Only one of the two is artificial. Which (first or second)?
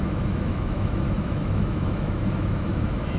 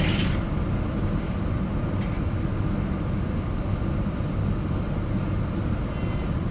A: first